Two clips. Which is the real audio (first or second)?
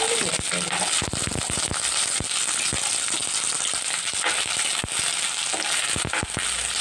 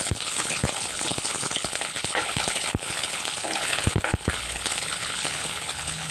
first